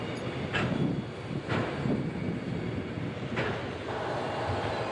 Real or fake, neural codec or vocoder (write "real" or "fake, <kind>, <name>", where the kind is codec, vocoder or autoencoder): real